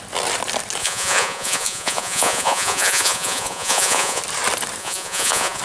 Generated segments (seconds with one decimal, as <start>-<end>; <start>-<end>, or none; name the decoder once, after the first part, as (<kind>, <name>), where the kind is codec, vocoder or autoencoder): 0.8-4.2 (vocoder, Vocos); 4.8-5.6